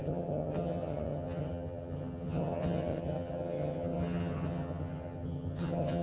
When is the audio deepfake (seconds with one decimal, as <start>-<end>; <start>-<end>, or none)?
0.0-6.0